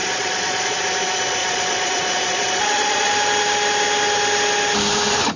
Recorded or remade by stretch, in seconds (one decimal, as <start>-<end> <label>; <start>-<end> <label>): 0.0-0.8 remade; 0.8-1.4 recorded; 1.4-3.1 remade; 3.1-5.4 recorded

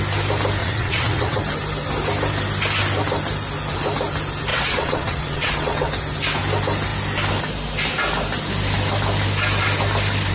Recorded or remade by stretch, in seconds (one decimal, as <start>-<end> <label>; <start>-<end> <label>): 0.0-0.6 recorded; 0.6-1.4 remade; 1.4-4.5 recorded; 4.5-5.9 remade; 5.9-10.3 recorded